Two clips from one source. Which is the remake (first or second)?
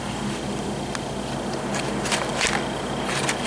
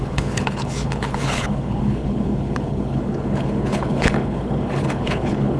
second